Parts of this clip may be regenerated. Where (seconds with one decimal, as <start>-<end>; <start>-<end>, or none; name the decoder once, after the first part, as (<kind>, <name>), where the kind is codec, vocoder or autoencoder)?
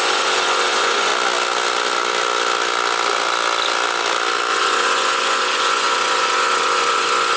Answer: 0.0-1.1 (vocoder, Vocos); 4.5-7.4